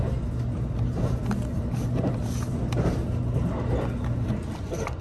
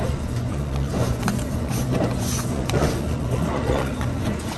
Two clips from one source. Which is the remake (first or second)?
second